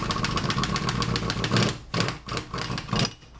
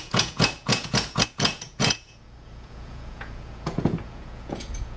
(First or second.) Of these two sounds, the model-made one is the second